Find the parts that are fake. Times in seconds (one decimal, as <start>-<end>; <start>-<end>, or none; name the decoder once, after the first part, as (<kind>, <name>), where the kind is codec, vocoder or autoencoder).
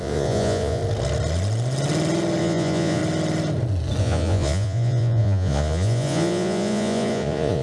0.0-0.8 (vocoder, Vocos); 2.4-3.0; 4.0-7.6